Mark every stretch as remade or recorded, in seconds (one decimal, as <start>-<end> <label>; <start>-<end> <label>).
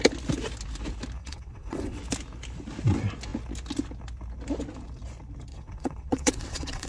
0.0-1.2 recorded; 1.2-2.0 remade; 2.0-5.5 recorded; 5.5-6.9 remade